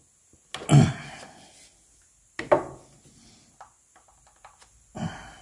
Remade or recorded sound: recorded